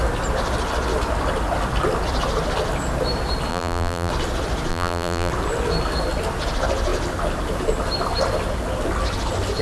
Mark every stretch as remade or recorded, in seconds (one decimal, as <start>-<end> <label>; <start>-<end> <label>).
0.0-3.5 recorded; 3.5-4.1 remade; 4.1-4.7 recorded; 4.7-5.3 remade; 5.3-9.6 recorded